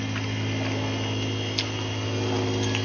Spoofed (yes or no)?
no